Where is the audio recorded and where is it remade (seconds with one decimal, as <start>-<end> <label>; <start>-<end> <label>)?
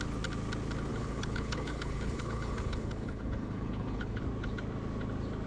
0.0-0.9 recorded; 0.9-4.2 remade; 4.2-5.5 recorded